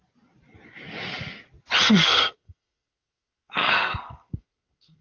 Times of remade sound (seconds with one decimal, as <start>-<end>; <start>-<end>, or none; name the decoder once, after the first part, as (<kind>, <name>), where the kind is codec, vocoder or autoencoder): 1.9-5.0 (codec, SNAC)

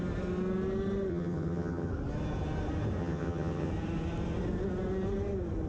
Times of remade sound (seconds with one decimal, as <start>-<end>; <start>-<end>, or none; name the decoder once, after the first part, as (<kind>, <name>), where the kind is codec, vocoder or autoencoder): 1.1-1.9 (vocoder, HiFi-GAN); 3.0-3.7

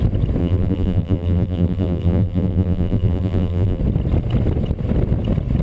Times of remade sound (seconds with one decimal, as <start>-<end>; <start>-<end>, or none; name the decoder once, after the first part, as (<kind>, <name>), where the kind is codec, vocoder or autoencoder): 0.4-3.8 (vocoder, BigVGAN v2)

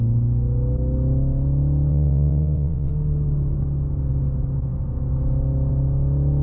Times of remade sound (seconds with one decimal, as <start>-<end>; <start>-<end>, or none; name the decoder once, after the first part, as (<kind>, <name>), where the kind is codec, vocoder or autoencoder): 1.9-2.9 (vocoder, WaveNeXt)

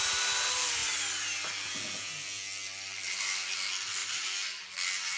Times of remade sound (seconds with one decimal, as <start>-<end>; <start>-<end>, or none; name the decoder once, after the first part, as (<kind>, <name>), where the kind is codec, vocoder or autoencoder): 4.0-4.7 (vocoder, BigVGAN v2)